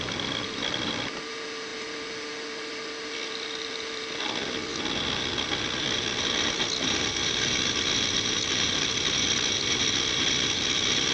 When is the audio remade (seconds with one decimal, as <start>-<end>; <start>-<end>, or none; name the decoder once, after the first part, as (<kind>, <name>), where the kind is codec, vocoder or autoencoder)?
none